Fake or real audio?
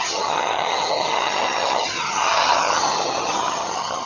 fake